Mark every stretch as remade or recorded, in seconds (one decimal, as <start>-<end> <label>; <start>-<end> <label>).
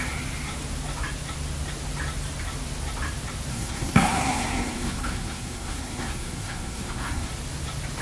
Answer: 0.0-3.5 recorded; 3.5-7.3 remade; 7.3-8.0 recorded